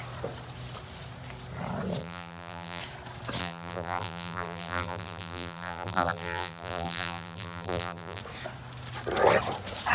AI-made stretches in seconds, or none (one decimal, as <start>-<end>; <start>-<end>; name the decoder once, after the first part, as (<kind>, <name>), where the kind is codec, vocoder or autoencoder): 2.0-2.8 (vocoder, BigVGAN v2); 3.4-8.2